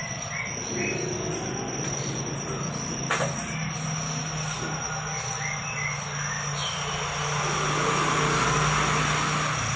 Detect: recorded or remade recorded